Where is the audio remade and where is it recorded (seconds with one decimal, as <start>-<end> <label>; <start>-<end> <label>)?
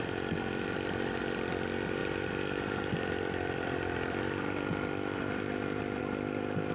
0.0-6.7 recorded